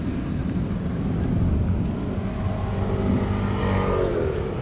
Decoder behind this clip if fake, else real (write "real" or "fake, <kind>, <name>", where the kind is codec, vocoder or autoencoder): real